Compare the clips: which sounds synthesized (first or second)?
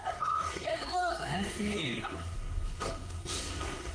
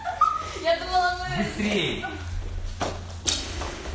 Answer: first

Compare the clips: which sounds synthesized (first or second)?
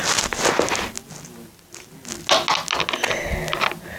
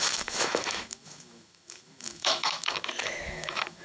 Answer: second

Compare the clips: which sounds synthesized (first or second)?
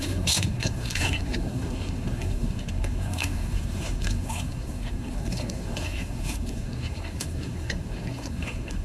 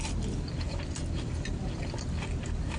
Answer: first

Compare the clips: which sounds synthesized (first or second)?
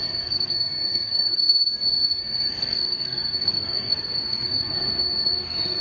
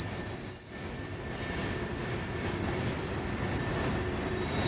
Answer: first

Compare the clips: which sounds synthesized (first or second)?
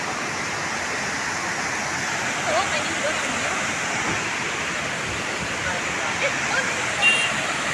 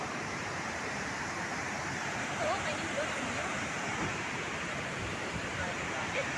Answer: second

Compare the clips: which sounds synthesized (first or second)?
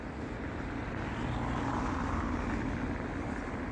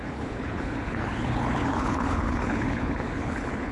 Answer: second